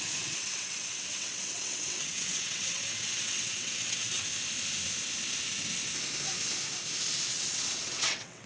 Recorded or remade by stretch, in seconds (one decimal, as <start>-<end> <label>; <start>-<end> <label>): 0.0-4.3 remade; 4.3-7.3 recorded; 7.3-8.5 remade